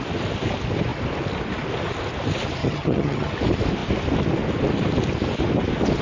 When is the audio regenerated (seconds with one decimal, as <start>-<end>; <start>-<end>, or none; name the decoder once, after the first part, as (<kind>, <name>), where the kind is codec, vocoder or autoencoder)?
2.6-3.3 (vocoder, HiFi-GAN)